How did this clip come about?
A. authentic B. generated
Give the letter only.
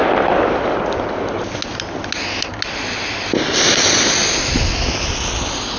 A